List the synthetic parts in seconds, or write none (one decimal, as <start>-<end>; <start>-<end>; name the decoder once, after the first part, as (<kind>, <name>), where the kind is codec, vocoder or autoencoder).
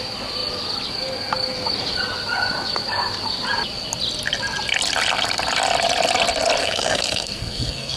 6.6-8.0 (codec, SNAC)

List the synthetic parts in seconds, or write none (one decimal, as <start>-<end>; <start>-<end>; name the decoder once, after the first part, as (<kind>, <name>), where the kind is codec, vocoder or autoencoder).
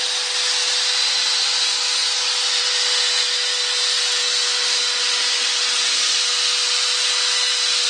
none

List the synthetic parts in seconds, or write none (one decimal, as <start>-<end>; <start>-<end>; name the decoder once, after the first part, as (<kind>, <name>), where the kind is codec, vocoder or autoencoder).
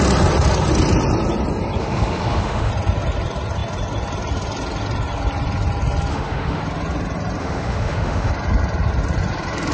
1.8-2.7 (autoencoder, DAC-VAE); 6.1-6.6; 7.4-8.3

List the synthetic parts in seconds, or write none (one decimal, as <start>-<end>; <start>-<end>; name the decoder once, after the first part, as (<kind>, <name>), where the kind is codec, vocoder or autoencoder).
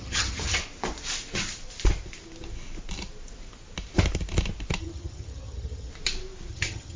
0.0-0.6 (vocoder, HiFi-GAN); 4.8-5.9; 6.5-7.0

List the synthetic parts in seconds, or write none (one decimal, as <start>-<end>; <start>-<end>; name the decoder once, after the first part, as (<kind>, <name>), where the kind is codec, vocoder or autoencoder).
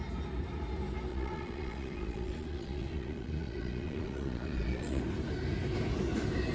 1.1-5.0 (vocoder, Vocos)